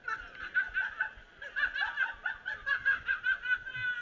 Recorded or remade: recorded